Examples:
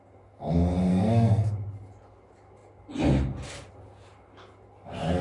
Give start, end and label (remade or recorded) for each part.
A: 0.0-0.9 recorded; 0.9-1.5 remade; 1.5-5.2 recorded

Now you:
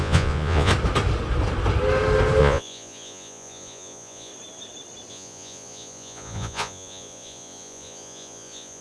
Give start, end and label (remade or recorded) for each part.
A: 0.0-0.7 remade; 0.7-2.4 recorded; 2.4-4.3 remade; 4.3-5.1 recorded; 5.1-8.8 remade

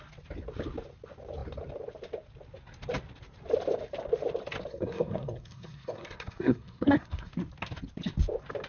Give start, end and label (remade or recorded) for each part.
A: 0.0-4.7 recorded; 4.7-7.3 remade; 7.3-8.7 recorded

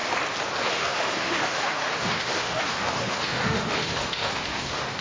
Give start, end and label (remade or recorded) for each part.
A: 0.0-0.7 recorded; 0.7-5.0 remade

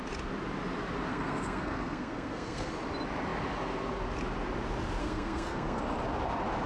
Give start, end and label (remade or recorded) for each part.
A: 0.0-1.1 recorded; 1.1-2.7 remade; 2.7-5.0 recorded; 5.0-5.8 remade; 5.8-6.7 recorded

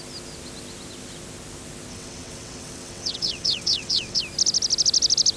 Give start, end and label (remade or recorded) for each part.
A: 0.0-1.9 recorded; 1.9-4.2 remade; 4.2-5.4 recorded